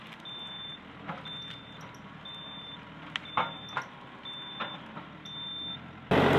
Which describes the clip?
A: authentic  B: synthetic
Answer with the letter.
A